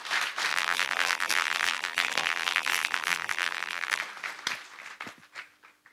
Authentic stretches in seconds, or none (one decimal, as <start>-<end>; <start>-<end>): 0.0-0.5; 4.0-5.9